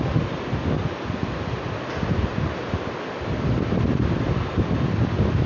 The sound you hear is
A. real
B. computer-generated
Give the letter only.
A